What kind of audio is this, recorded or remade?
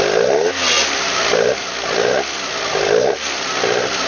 recorded